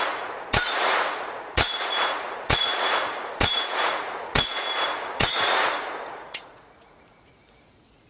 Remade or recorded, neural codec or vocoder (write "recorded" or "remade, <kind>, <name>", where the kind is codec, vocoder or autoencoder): remade, vocoder, Vocos